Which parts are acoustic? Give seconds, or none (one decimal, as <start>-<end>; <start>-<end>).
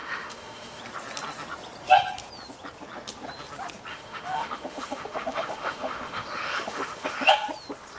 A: 0.8-3.9; 7.3-8.0